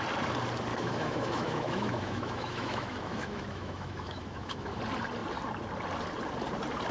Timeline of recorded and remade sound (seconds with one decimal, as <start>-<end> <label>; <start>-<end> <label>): 0.0-0.7 recorded; 0.7-4.8 remade; 4.8-6.9 recorded